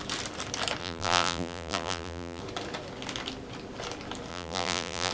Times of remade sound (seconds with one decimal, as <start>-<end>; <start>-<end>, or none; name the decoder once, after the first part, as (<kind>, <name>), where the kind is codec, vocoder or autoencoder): 0.8-2.4 (vocoder, BigVGAN v2); 4.3-5.1